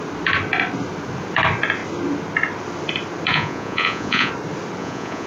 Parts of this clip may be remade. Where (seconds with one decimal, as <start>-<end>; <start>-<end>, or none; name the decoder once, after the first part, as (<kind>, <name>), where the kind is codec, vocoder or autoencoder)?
3.3-4.3 (vocoder, Vocos); 4.8-5.3